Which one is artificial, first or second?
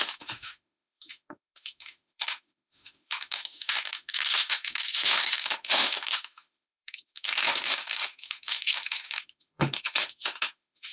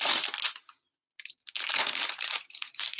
first